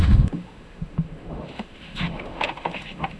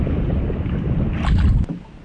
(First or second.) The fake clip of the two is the first